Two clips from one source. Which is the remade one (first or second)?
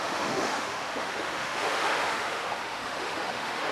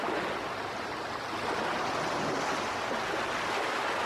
first